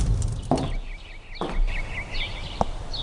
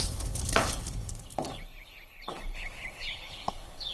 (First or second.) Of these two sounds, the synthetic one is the second